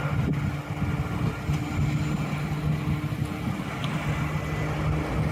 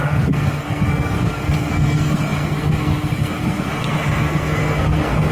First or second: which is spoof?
second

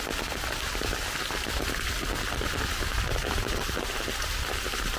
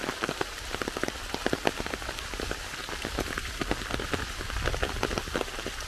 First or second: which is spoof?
second